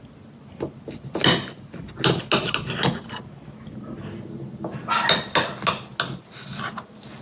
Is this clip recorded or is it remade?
recorded